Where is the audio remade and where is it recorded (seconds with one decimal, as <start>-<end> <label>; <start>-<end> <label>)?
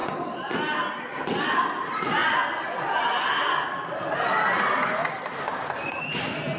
0.0-6.6 recorded